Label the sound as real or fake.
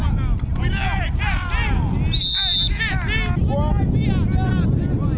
real